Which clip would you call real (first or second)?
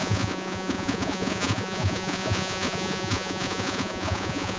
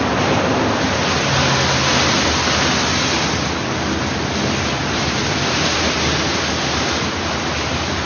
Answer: second